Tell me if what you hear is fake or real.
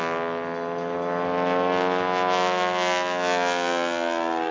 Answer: real